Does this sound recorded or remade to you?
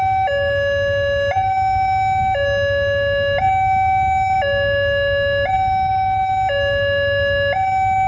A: recorded